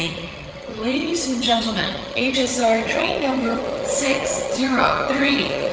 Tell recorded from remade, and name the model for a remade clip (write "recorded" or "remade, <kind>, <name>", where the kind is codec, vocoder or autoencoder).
remade, vocoder, HiFi-GAN